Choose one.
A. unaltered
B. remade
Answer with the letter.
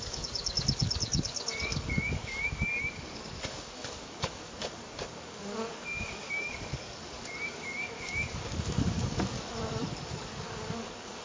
B